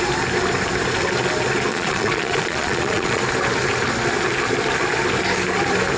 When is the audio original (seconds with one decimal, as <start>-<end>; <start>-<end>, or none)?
0.0-1.7; 3.2-6.0